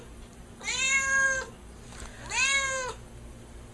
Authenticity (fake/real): real